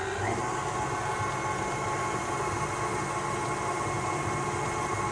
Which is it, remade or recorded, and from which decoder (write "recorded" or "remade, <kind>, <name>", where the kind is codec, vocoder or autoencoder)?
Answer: recorded